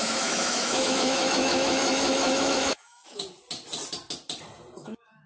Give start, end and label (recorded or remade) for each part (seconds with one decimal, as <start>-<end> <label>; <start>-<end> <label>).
0.0-3.2 remade; 3.2-4.8 recorded; 4.8-5.3 remade